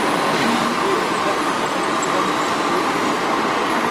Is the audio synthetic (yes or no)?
no